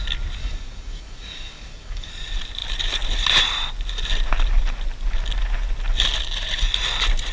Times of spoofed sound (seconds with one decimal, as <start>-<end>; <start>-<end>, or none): 0.4-2.1